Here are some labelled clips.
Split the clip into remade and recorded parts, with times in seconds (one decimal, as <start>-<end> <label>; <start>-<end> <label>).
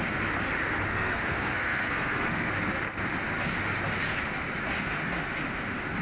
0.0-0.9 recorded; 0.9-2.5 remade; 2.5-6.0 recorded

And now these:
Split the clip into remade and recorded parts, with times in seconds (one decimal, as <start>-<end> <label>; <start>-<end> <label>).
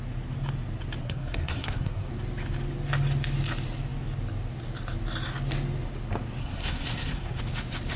0.0-1.0 recorded; 1.0-2.1 remade; 2.1-6.4 recorded; 6.4-7.4 remade; 7.4-8.0 recorded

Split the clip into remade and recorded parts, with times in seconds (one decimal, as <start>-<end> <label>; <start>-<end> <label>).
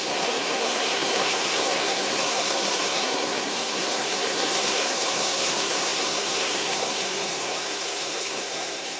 0.0-9.0 remade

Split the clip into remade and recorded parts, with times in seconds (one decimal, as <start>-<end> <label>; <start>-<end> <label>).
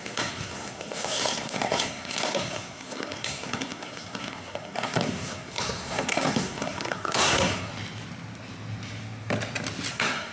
0.0-7.7 remade; 7.7-9.9 recorded; 9.9-10.3 remade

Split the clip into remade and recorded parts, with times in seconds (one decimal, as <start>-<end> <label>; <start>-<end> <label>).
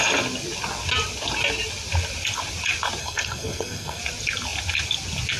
0.0-3.0 recorded; 3.0-4.0 remade; 4.0-5.4 recorded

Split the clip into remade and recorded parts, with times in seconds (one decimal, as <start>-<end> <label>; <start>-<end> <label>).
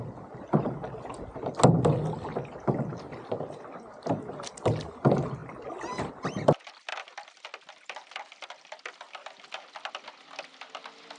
0.0-11.2 recorded